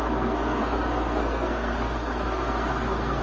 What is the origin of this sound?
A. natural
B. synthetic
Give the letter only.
B